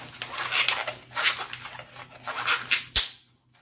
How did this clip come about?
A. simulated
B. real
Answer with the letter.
B